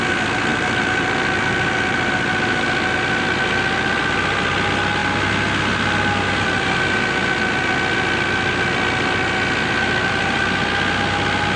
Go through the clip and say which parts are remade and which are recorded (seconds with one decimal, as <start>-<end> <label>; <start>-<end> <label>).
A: 0.0-0.5 recorded; 0.5-2.1 remade; 2.1-11.6 recorded